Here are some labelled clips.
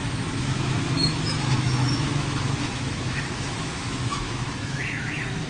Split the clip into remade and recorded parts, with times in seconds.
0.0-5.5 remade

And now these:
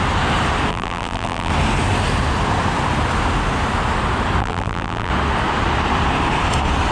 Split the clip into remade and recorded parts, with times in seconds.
0.0-0.7 recorded; 0.7-1.5 remade; 1.5-4.4 recorded; 4.4-5.1 remade; 5.1-6.9 recorded